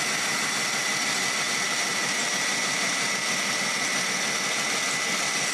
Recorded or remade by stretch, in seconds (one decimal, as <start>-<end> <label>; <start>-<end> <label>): 0.0-1.9 recorded; 1.9-3.1 remade; 3.1-5.5 recorded